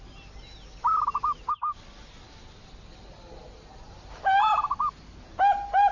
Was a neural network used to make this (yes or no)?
no